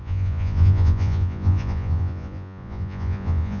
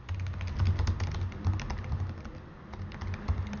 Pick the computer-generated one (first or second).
first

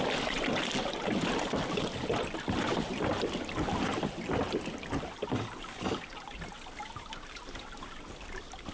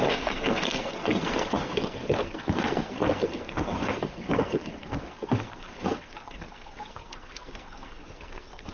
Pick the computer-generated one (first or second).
second